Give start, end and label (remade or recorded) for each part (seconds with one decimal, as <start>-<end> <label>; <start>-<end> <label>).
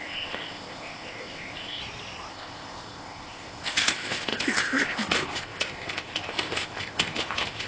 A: 0.0-1.8 remade; 1.8-2.3 recorded; 2.3-7.7 remade